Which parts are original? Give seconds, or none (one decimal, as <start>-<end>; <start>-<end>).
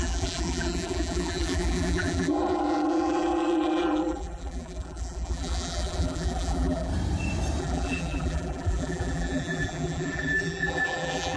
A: 6.9-7.6